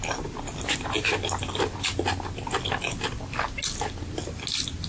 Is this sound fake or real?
real